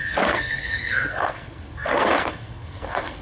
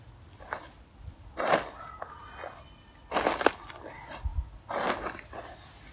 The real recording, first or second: second